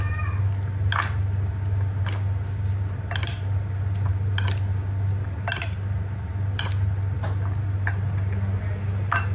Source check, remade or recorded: recorded